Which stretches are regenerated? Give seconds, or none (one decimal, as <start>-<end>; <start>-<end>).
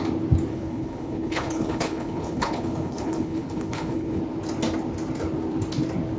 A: 0.5-4.2